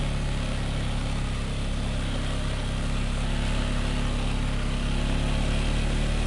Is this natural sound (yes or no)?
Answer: yes